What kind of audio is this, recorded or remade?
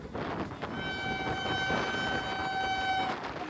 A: recorded